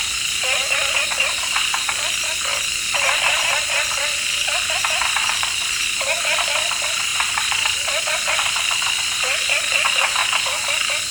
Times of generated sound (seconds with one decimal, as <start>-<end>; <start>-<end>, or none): 0.0-10.2